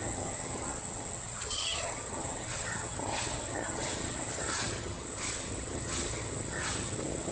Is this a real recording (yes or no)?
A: no